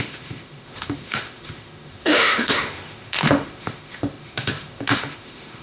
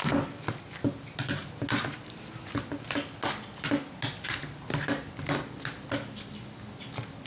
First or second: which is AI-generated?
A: first